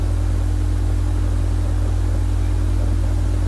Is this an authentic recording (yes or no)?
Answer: yes